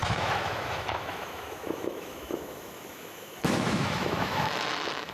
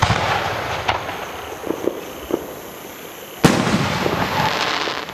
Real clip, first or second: second